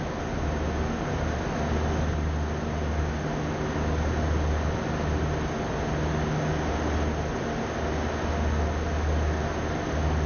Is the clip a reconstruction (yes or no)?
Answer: no